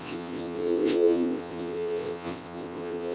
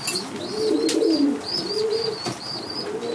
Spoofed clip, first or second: first